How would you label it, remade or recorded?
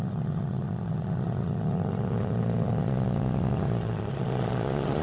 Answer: remade